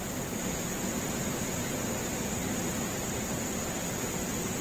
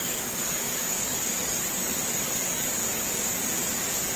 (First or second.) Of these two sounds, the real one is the first